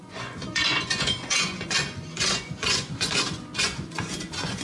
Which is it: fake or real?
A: fake